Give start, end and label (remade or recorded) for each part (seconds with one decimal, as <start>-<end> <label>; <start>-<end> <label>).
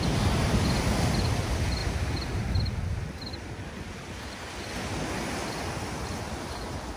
0.0-7.0 recorded